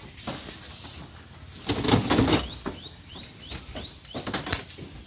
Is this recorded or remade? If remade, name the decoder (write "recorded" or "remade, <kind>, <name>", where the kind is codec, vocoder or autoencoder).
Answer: recorded